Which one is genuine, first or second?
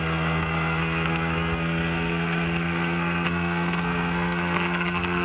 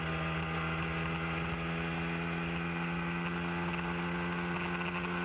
second